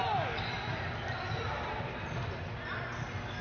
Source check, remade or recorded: recorded